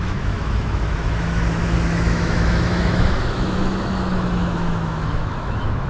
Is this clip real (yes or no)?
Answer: no